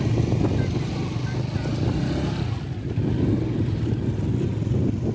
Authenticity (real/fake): real